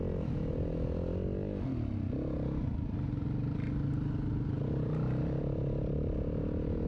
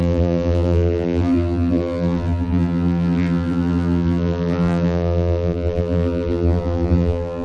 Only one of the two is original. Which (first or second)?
first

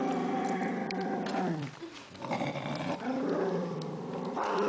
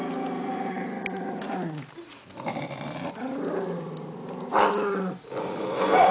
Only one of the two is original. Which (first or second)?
second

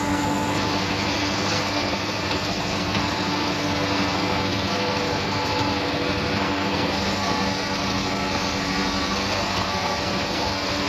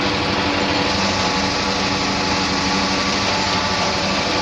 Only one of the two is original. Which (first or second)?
second